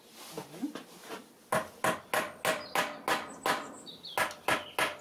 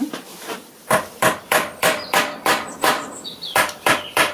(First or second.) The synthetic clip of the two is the second